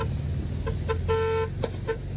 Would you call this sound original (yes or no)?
yes